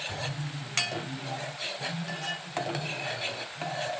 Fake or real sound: real